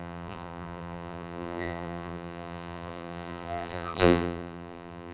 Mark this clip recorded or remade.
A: remade